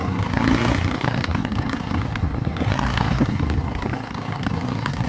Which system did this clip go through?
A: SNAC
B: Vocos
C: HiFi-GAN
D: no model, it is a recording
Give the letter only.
A